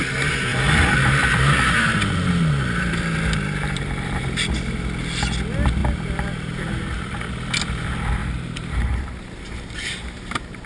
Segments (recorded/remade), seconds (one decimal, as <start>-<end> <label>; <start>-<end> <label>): 0.0-0.5 recorded; 0.5-4.2 remade; 4.2-5.8 recorded; 5.8-7.3 remade; 7.3-8.2 recorded; 8.2-10.7 remade